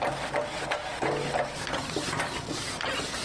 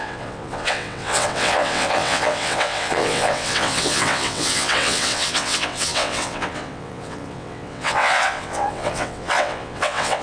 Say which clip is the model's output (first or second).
second